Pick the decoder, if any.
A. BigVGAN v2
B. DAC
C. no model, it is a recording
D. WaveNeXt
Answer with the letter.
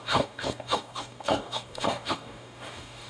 B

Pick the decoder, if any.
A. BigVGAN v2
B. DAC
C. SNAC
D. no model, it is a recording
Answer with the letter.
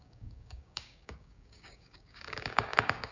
B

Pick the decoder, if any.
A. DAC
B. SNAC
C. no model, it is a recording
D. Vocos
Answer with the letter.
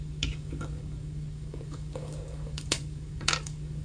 A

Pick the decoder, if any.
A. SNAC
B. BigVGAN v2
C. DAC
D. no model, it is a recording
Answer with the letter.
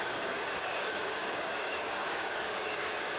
C